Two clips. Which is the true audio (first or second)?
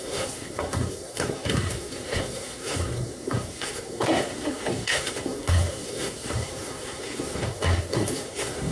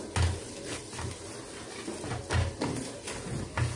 second